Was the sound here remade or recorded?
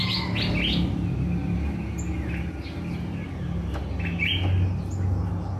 recorded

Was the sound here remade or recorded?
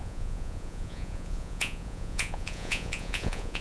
remade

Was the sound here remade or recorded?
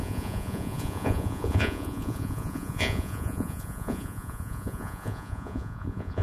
remade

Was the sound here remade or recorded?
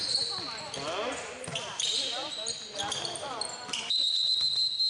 recorded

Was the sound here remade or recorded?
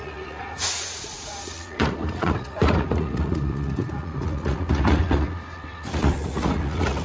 remade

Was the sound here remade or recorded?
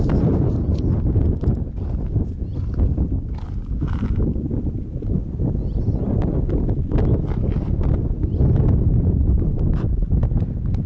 recorded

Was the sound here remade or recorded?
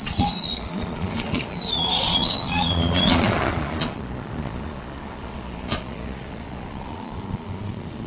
remade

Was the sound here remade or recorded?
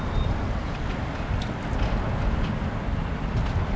recorded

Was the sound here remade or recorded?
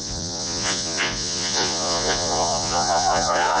remade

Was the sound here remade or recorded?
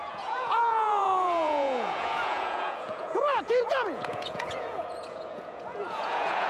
remade